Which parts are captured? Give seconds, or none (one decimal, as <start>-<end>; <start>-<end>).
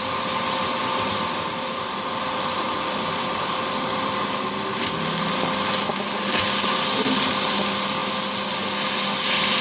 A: 0.8-2.2; 3.3-7.3; 8.0-9.6